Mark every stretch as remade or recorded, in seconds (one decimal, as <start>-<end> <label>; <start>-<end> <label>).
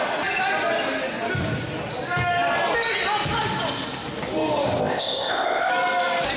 0.0-4.8 recorded; 4.8-5.7 remade; 5.7-6.4 recorded